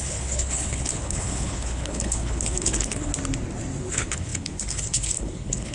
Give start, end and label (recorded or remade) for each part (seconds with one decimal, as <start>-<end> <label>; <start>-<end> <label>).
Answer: 0.0-3.1 remade; 3.1-3.9 recorded; 3.9-5.7 remade